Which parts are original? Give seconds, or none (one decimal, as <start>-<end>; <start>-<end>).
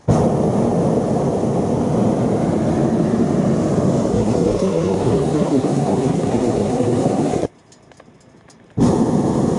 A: 0.0-4.1; 7.5-9.6